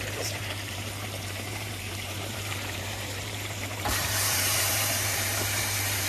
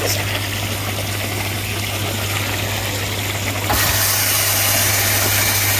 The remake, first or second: first